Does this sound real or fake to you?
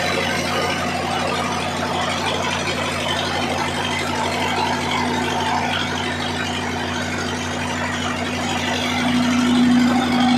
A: real